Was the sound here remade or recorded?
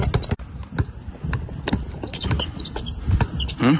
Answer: recorded